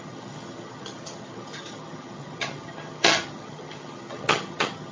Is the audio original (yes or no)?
no